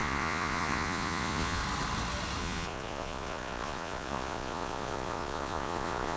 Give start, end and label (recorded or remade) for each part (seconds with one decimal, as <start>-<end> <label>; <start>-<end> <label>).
0.0-1.6 remade; 1.6-2.4 recorded; 2.4-6.2 remade